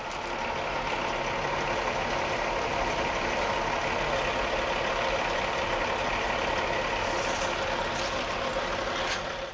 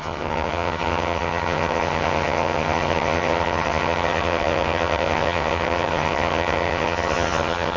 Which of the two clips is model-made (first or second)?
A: second